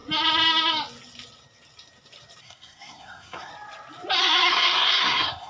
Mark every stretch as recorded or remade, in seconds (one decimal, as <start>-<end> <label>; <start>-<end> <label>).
0.0-2.4 recorded; 2.4-3.5 remade; 3.5-4.2 recorded; 4.2-5.5 remade